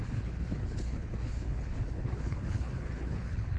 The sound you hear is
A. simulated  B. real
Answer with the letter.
A